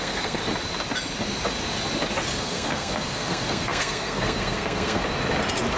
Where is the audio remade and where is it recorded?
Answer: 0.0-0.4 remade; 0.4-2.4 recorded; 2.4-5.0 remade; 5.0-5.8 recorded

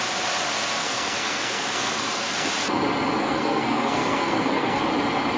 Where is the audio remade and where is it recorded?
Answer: 0.0-0.8 recorded; 0.8-2.5 remade; 2.5-3.2 recorded; 3.2-4.8 remade; 4.8-5.4 recorded

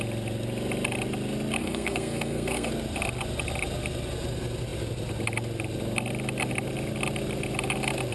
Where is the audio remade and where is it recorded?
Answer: 0.0-1.6 recorded; 1.6-2.7 remade; 2.7-8.1 recorded

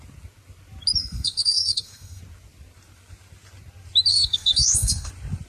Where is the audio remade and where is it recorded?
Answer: 0.0-1.0 recorded; 1.0-2.2 remade; 2.2-4.1 recorded; 4.1-5.1 remade; 5.1-5.5 recorded

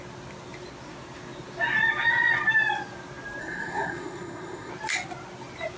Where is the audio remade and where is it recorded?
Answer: 0.0-3.4 recorded; 3.4-4.7 remade; 4.7-5.8 recorded